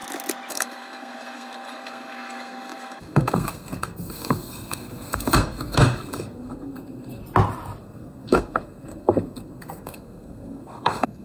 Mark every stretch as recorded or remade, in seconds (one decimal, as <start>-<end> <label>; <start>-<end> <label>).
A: 0.0-0.5 recorded; 0.5-7.2 remade; 7.2-7.8 recorded; 7.8-11.2 remade